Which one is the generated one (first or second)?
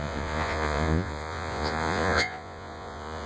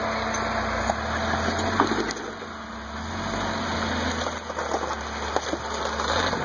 first